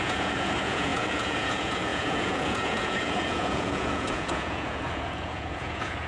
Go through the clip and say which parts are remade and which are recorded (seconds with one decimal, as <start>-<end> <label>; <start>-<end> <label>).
0.0-6.1 remade